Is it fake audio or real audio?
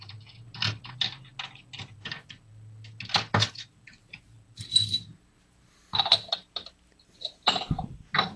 real